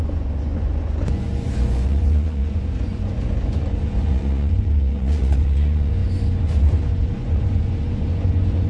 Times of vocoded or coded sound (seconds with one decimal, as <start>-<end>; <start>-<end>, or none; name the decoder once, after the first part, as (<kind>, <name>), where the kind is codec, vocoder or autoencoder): 0.0-8.7 (vocoder, Vocos)